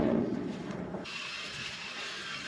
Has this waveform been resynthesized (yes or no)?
yes